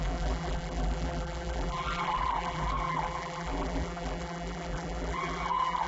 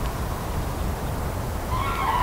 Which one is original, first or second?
second